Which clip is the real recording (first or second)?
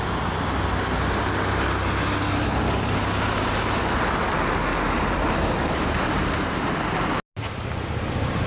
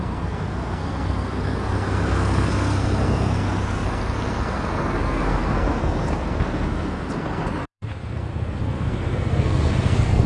first